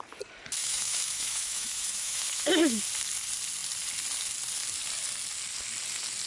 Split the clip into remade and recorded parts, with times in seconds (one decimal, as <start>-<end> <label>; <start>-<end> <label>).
0.0-0.6 recorded; 0.6-2.8 remade; 2.8-6.3 recorded